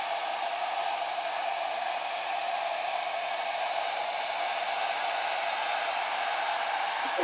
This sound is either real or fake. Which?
real